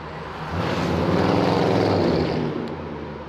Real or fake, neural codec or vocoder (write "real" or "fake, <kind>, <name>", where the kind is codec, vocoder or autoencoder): real